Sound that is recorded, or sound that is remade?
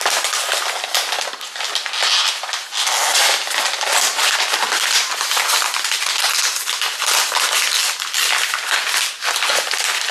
recorded